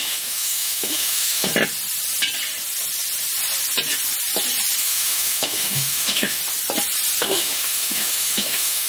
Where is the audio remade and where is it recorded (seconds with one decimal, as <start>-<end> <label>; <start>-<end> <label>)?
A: 0.0-1.5 remade; 1.5-4.8 recorded; 4.8-6.4 remade; 6.4-7.2 recorded; 7.2-8.9 remade

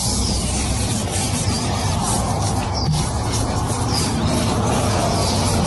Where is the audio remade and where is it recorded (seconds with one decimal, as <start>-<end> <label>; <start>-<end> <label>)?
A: 0.0-2.0 remade; 2.0-5.7 recorded

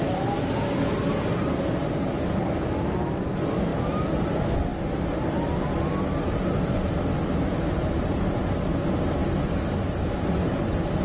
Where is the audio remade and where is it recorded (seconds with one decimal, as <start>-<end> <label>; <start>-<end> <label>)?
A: 0.0-11.0 recorded

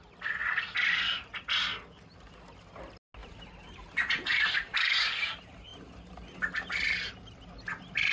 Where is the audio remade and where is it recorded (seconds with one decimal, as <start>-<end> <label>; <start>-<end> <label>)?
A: 0.0-3.2 recorded; 3.2-5.3 remade; 5.3-8.1 recorded

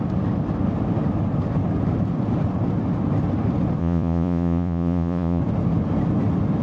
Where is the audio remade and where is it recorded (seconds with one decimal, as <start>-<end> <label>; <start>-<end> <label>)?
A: 0.0-3.8 recorded; 3.8-5.4 remade; 5.4-6.6 recorded

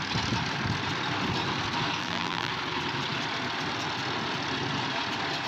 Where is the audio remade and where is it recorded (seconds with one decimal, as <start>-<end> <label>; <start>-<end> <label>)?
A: 0.0-2.0 recorded; 2.0-2.5 remade; 2.5-5.5 recorded

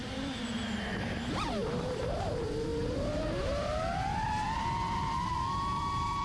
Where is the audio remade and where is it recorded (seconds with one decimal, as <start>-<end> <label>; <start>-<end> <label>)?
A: 0.0-0.9 recorded; 0.9-6.2 remade